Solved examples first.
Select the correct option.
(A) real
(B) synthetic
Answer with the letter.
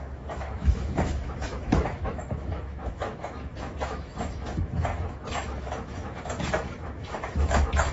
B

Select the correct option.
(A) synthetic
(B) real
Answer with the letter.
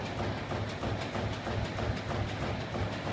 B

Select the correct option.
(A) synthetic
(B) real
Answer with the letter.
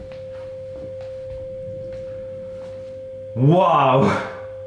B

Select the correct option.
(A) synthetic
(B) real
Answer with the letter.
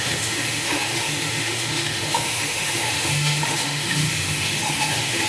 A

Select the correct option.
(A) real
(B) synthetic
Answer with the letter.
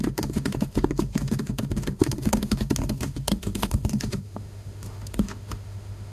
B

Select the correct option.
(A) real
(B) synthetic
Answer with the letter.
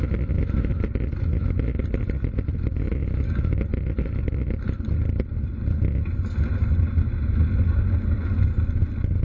A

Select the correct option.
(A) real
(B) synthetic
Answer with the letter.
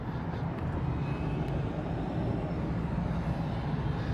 A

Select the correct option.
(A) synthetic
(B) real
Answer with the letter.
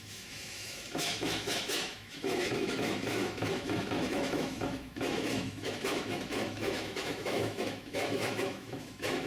A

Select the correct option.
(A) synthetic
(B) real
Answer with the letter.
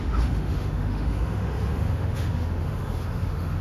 A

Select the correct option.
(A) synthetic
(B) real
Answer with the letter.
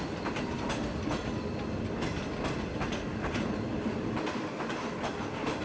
B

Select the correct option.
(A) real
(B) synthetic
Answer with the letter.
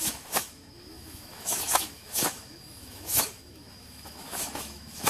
B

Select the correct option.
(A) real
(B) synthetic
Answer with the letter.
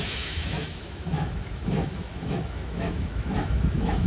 B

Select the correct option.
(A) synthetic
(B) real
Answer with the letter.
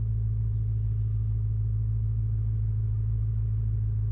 B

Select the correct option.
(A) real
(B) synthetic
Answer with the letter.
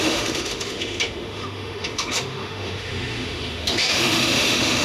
B